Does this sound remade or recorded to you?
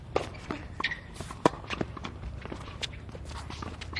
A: remade